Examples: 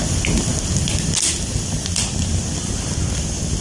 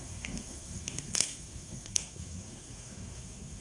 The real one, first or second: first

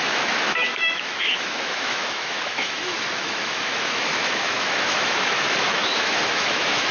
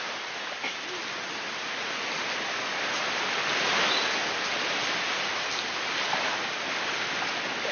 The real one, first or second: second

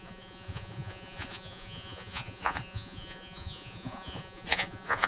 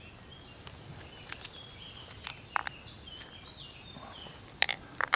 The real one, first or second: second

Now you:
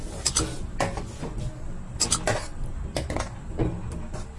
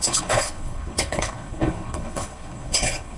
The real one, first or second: first